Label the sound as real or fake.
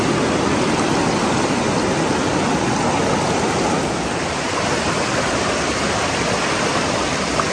real